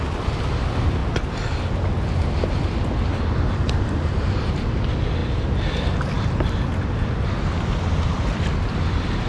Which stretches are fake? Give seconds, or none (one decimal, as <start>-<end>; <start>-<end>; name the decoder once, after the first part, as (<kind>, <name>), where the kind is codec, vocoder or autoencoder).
none